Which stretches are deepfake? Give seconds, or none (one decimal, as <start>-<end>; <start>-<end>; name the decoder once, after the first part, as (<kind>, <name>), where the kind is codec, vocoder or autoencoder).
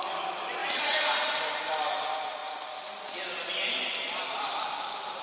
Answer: 0.6-1.2 (vocoder, Vocos)